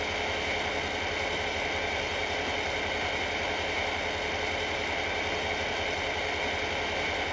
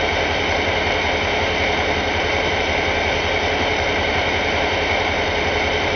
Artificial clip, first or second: second